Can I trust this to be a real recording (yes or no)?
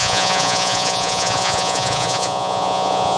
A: no